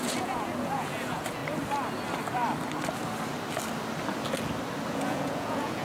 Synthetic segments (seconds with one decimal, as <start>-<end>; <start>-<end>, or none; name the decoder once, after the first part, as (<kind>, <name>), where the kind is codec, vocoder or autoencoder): 0.0-1.4 (vocoder, Vocos); 4.9-5.8